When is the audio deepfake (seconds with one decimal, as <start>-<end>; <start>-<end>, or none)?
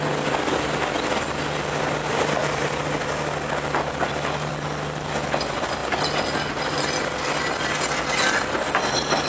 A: none